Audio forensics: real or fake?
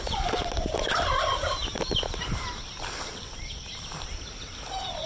real